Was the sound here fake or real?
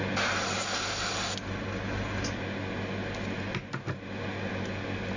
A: real